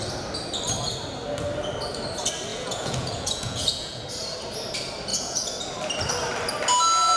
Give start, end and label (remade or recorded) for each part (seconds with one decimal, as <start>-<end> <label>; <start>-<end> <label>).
0.0-2.5 recorded; 2.5-4.0 remade; 4.0-5.1 recorded; 5.1-5.6 remade; 5.6-7.2 recorded